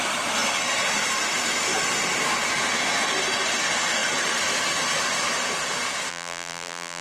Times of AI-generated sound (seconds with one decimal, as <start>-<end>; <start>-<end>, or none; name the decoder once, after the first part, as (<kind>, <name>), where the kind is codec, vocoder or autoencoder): 6.1-7.0 (vocoder, BigVGAN v2)